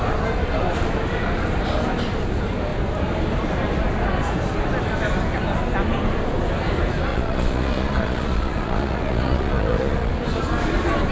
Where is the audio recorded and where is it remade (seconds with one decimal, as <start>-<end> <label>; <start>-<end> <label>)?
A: 0.0-7.1 recorded; 7.1-10.1 remade; 10.1-11.1 recorded